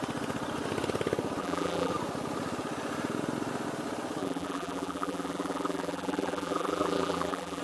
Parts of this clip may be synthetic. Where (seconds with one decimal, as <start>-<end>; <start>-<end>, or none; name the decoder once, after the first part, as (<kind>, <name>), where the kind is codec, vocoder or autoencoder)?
1.4-1.9 (vocoder, BigVGAN v2); 4.2-7.6